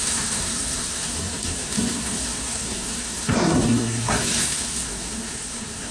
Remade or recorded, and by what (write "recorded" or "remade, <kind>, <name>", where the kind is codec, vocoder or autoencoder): remade, codec, SNAC